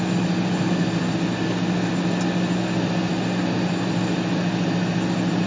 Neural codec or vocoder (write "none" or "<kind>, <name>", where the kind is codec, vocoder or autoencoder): none